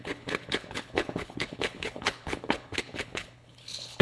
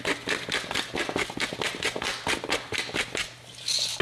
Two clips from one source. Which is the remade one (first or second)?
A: first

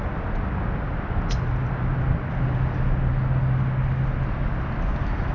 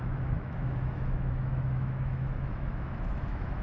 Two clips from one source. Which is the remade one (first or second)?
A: second